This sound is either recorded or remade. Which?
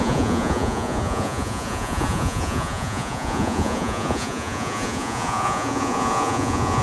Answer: remade